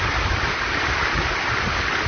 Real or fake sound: real